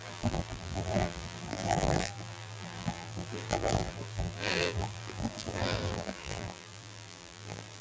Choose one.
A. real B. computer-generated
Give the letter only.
B